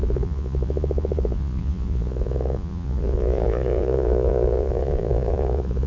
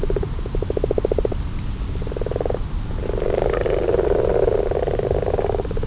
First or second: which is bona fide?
second